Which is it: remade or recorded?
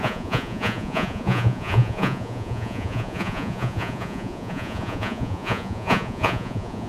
remade